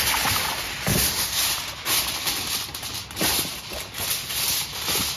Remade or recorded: recorded